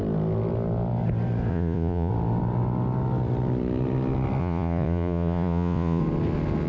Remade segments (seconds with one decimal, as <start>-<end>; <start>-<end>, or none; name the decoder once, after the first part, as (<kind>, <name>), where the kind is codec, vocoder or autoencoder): 1.5-2.1 (vocoder, Vocos); 4.4-6.0